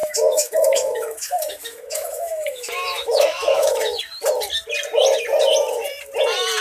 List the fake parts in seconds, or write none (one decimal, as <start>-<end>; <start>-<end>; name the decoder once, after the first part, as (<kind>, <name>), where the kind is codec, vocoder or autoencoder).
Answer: 0.0-4.0 (autoencoder, DAC-VAE)